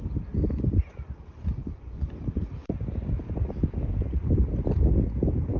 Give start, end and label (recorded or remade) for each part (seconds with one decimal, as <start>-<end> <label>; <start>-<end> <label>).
0.0-1.6 recorded; 1.6-2.1 remade; 2.1-5.6 recorded